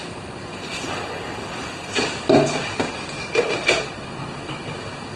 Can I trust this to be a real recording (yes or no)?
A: no